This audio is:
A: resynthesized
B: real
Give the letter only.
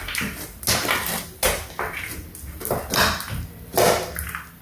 B